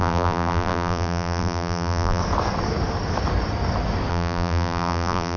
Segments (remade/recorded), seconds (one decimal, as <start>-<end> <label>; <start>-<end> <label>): 0.0-2.2 remade; 2.2-4.1 recorded; 4.1-5.4 remade